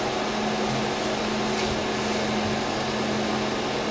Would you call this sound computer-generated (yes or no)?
no